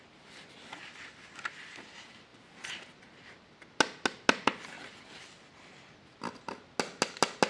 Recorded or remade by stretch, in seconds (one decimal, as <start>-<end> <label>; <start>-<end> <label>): 0.0-7.5 recorded